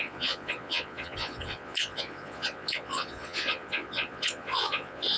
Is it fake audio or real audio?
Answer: fake